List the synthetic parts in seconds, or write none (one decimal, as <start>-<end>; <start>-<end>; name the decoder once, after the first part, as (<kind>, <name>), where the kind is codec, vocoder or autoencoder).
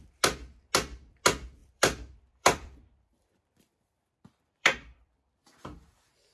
1.6-5.4 (vocoder, BigVGAN v2)